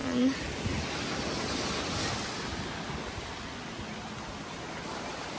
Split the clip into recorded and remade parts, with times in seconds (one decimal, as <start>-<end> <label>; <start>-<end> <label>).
0.0-5.4 recorded